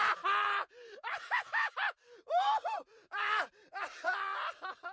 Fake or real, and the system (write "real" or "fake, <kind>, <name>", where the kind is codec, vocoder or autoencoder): fake, vocoder, BigVGAN v2